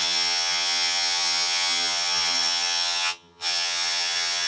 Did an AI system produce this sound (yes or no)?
yes